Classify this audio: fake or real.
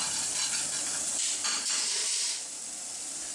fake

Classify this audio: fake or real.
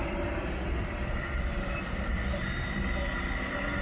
fake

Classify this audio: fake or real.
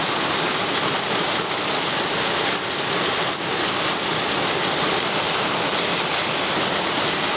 real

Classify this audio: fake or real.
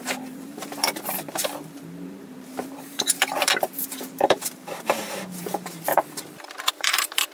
fake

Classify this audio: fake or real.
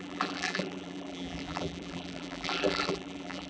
fake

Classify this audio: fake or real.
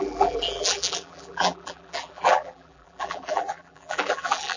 fake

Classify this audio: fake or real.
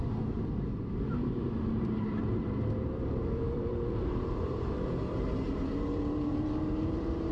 fake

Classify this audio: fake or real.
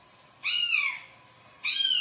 real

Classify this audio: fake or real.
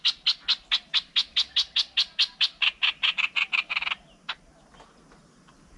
real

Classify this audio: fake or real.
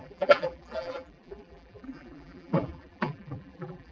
fake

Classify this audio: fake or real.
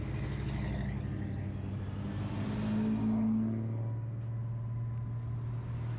real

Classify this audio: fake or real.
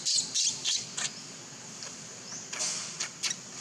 real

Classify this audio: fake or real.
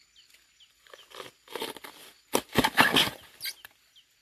real